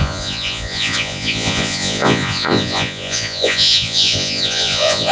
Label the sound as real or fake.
fake